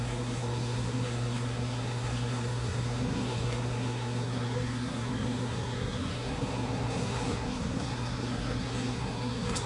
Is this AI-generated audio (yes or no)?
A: yes